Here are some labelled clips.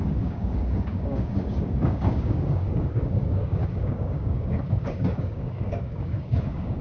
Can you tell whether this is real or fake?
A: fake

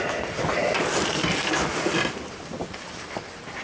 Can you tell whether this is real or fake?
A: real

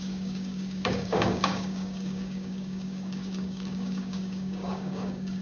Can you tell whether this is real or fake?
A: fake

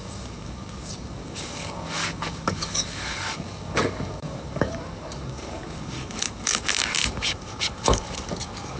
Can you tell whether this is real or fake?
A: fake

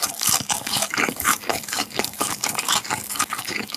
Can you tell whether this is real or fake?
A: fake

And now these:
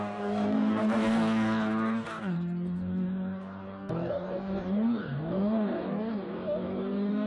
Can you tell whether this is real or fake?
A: fake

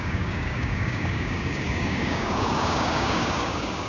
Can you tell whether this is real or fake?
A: fake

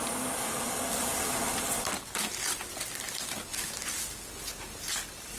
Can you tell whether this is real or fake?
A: real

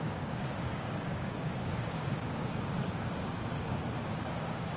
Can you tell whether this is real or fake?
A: fake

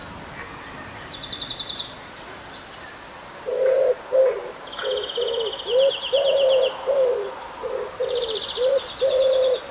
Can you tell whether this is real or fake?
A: real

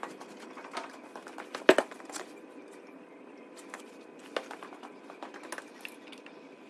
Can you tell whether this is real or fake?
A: real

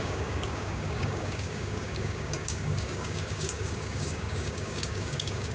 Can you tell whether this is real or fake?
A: fake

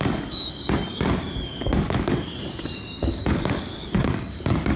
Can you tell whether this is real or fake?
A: fake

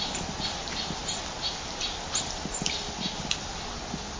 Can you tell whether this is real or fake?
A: real